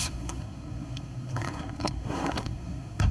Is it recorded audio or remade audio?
remade